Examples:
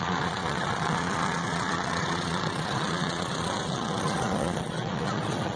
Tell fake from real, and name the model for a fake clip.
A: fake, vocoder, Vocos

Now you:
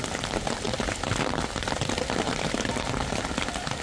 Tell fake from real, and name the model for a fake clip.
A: real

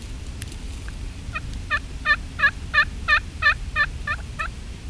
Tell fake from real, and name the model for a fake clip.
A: real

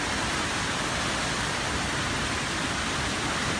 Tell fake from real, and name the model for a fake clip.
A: real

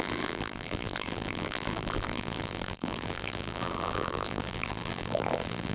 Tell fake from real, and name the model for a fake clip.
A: fake, vocoder, BigVGAN v2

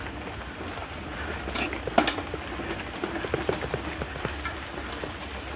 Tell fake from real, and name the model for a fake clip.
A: real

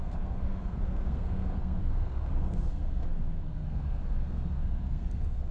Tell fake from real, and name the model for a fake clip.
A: fake, codec, SNAC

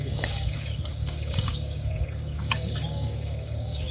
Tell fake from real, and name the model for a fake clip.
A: fake, codec, DAC